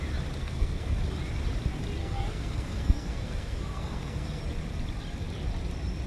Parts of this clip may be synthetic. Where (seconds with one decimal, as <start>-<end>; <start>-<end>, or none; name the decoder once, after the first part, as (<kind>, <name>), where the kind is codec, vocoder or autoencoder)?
0.4-1.0 (codec, SNAC); 2.0-4.4